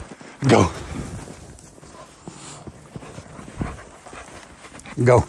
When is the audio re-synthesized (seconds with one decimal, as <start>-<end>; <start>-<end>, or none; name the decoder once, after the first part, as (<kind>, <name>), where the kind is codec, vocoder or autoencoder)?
none